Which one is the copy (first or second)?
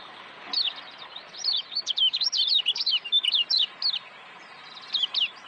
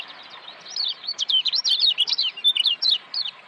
second